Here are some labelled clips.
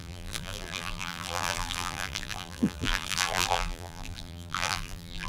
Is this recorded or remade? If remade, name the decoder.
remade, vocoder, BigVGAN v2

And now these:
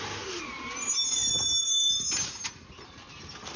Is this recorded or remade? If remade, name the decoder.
recorded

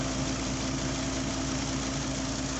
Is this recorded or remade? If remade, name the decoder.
recorded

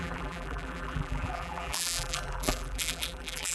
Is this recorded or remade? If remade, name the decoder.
remade, vocoder, BigVGAN v2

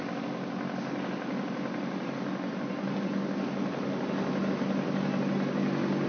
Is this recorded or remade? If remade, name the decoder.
recorded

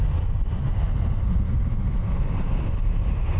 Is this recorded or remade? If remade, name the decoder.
recorded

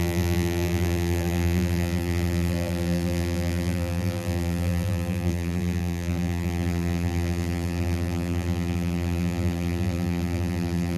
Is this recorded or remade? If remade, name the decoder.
remade, vocoder, BigVGAN v2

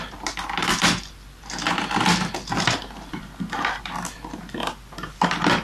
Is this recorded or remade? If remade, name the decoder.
recorded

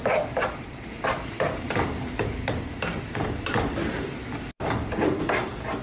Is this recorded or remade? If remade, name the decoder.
remade, vocoder, BigVGAN v2